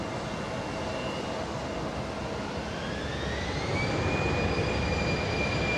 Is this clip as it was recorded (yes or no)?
yes